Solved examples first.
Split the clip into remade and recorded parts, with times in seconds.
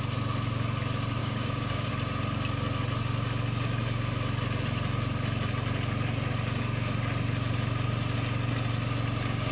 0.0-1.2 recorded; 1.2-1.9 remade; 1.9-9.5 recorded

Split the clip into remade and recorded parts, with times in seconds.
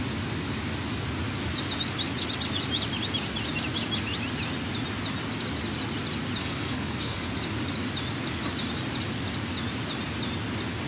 0.0-6.4 recorded; 6.4-7.3 remade; 7.3-10.9 recorded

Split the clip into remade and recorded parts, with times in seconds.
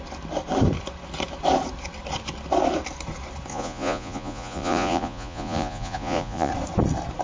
0.0-3.5 recorded; 3.5-6.5 remade; 6.5-7.2 recorded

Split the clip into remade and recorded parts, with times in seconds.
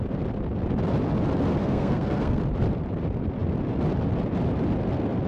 0.0-1.6 recorded; 1.6-2.4 remade; 2.4-5.3 recorded